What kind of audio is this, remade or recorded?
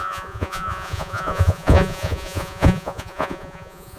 remade